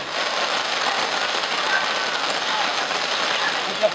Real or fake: real